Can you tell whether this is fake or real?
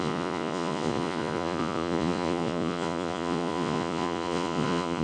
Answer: fake